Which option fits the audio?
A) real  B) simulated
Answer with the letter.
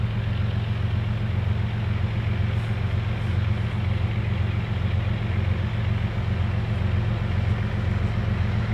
A